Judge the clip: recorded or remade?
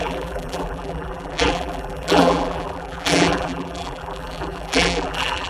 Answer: remade